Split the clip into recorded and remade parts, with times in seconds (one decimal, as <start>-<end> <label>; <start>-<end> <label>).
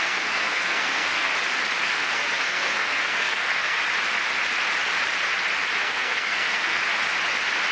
0.0-1.3 remade; 1.3-1.8 recorded; 1.8-3.8 remade; 3.8-5.8 recorded; 5.8-6.8 remade; 6.8-7.7 recorded